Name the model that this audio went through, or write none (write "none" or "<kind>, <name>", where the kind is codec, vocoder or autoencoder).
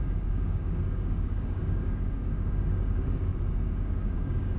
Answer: codec, DAC